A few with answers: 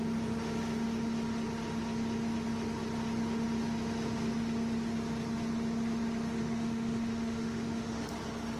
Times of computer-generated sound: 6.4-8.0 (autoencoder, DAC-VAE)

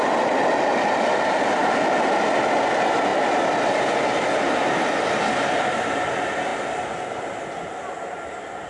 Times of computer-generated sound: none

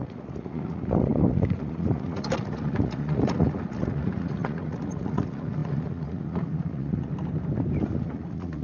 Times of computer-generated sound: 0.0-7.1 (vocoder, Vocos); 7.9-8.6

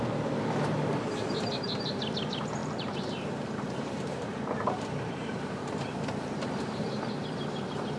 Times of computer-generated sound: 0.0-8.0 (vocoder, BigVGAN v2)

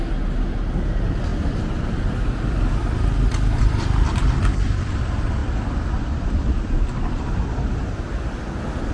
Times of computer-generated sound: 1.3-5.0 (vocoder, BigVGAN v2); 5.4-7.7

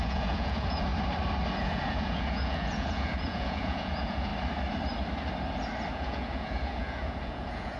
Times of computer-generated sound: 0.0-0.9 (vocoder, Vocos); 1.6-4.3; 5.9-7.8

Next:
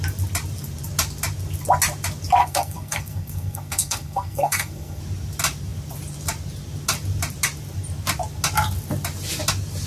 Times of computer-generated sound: 2.4-5.0 (codec, SNAC)